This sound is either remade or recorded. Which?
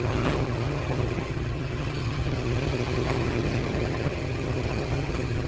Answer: remade